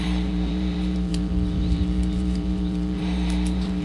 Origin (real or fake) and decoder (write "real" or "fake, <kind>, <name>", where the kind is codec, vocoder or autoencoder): fake, vocoder, BigVGAN v2